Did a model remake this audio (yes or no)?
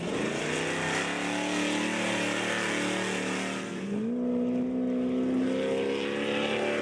no